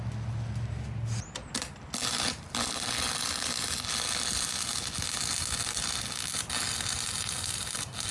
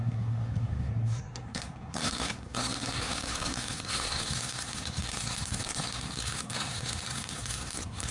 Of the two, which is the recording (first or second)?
first